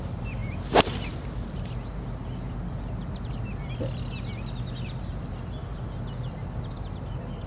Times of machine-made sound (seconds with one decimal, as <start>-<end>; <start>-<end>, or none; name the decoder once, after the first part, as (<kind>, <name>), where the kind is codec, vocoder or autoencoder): none